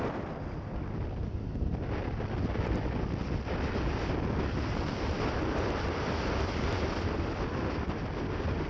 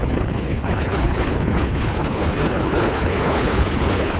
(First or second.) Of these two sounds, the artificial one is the second